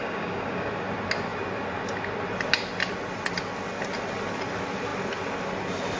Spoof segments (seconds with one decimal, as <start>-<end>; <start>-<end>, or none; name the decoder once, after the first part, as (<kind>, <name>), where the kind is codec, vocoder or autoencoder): 0.0-0.7 (codec, DAC)